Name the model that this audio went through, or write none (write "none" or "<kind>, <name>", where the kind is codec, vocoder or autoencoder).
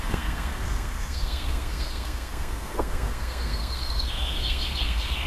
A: codec, SNAC